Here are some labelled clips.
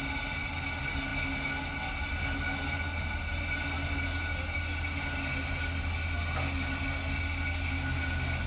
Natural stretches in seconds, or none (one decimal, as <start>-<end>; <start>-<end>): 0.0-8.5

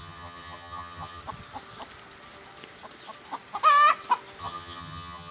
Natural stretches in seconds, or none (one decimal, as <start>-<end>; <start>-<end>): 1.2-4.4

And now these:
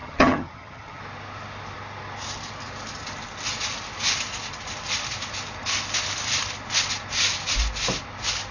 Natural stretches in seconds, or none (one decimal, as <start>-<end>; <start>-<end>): 1.0-8.5